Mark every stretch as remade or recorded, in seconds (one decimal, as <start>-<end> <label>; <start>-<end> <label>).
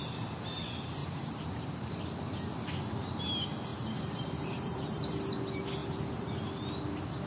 0.0-1.0 recorded; 1.0-2.0 remade; 2.0-3.7 recorded; 3.7-5.3 remade; 5.3-5.8 recorded; 5.8-6.4 remade; 6.4-7.3 recorded